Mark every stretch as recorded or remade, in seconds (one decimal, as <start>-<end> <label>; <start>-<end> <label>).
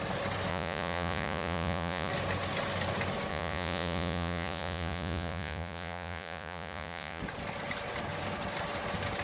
0.0-0.5 recorded; 0.5-2.1 remade; 2.1-3.3 recorded; 3.3-7.2 remade; 7.2-9.2 recorded